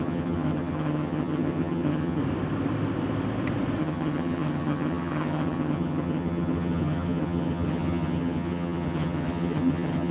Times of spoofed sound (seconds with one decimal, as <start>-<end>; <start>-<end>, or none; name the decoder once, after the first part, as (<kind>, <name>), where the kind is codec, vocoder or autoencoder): 0.0-2.2 (vocoder, HiFi-GAN); 3.8-10.1